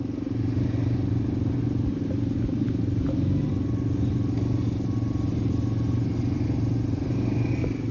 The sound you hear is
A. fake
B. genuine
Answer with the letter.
B